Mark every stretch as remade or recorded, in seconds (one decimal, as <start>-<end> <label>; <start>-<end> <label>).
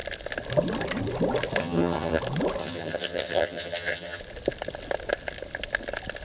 0.0-1.6 recorded; 1.6-2.2 remade; 2.2-2.6 recorded; 2.6-4.2 remade; 4.2-6.2 recorded